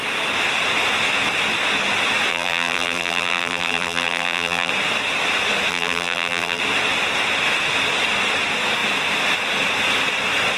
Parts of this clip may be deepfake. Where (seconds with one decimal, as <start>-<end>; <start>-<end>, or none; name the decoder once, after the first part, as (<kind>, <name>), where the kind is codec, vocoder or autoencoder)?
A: 2.3-4.7 (vocoder, BigVGAN v2); 5.7-6.6